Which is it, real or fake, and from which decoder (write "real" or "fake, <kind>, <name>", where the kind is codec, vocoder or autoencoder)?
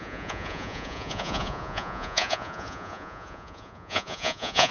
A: fake, vocoder, Vocos